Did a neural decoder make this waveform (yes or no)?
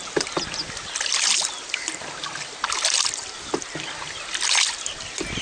no